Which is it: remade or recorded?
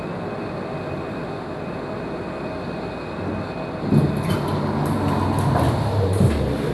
recorded